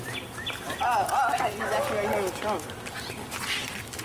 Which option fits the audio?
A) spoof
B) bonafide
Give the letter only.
B